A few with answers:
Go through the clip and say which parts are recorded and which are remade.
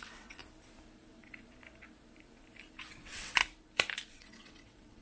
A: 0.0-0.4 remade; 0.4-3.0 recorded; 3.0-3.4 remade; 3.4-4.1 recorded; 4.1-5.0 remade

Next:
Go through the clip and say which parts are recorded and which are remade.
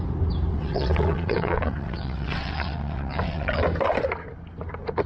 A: 0.0-0.5 recorded; 0.5-3.6 remade; 3.6-5.1 recorded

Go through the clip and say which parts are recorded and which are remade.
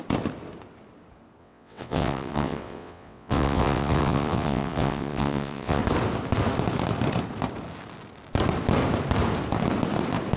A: 0.0-1.4 recorded; 1.4-5.8 remade; 5.8-10.4 recorded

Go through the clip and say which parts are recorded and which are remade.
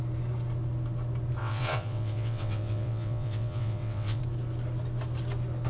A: 0.0-1.4 recorded; 1.4-4.2 remade; 4.2-5.7 recorded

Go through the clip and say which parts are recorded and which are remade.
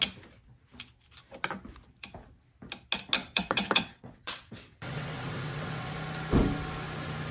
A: 0.0-3.2 recorded; 3.2-5.9 remade; 5.9-7.3 recorded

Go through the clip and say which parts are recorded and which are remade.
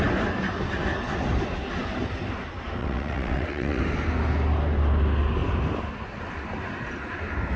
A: 0.0-2.8 recorded; 2.8-3.8 remade; 3.8-7.6 recorded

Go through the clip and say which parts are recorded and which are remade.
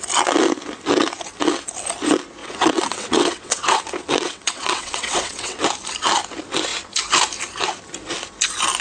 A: 0.0-2.4 recorded; 2.4-5.6 remade; 5.6-8.8 recorded